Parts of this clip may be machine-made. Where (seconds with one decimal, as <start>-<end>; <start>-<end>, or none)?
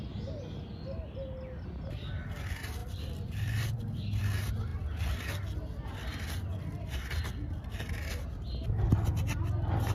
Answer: 2.8-4.2